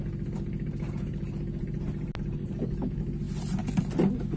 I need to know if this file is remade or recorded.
recorded